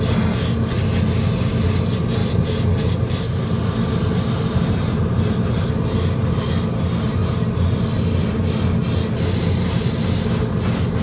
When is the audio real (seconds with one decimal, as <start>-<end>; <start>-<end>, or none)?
0.0-2.2; 5.7-11.0